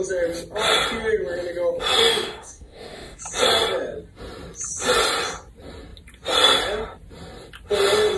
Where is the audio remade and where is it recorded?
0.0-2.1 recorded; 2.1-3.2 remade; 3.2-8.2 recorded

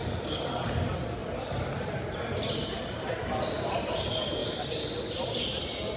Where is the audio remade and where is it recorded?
0.0-6.0 recorded